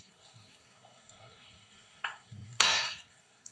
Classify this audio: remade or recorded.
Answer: remade